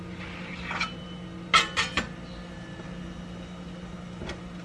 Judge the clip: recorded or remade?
recorded